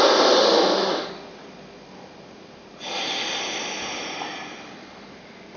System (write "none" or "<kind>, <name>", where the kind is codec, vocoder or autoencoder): none